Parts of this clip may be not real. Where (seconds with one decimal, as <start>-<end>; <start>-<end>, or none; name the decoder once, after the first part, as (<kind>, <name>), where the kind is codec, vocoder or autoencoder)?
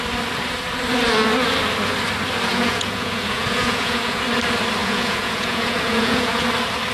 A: 2.5-4.2 (vocoder, Vocos); 4.8-6.4